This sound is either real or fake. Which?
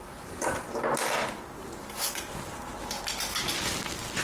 real